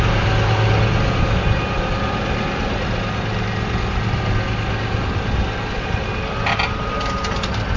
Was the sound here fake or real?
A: real